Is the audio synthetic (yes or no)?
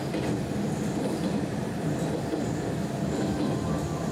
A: no